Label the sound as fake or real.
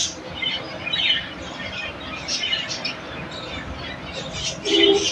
fake